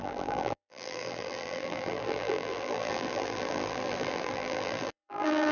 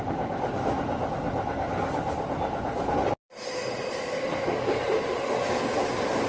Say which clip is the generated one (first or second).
first